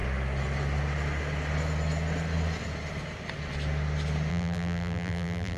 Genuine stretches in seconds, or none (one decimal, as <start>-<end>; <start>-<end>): 0.0-4.3